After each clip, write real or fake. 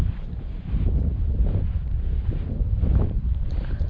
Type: fake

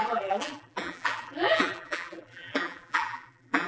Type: fake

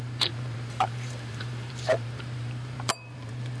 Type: fake